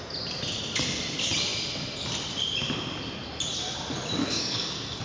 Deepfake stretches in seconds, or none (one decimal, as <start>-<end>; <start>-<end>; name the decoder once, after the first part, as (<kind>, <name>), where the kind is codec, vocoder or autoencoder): 4.2-5.0 (codec, SNAC)